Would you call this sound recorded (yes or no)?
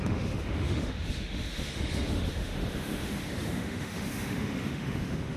no